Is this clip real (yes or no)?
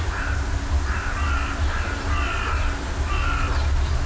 yes